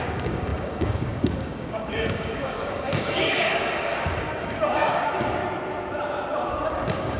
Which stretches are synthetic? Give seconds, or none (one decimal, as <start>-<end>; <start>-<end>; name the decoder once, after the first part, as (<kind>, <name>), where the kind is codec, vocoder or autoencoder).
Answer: 0.0-5.4 (codec, DAC); 6.5-7.2